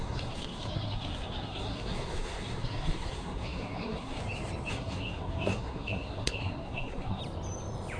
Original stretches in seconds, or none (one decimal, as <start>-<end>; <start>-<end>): 4.2-4.7; 7.2-8.0

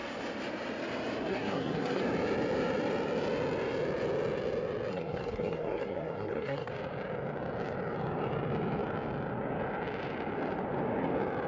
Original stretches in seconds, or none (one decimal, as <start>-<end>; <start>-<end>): 0.0-1.3; 2.0-4.9; 6.7-11.5

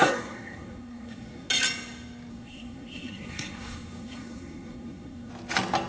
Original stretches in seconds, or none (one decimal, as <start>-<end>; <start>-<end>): 1.5-2.3; 5.3-5.9

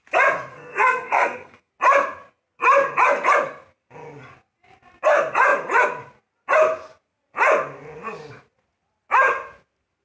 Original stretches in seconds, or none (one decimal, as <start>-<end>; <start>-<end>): 0.0-0.5; 1.7-10.0